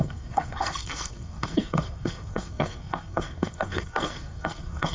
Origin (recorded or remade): remade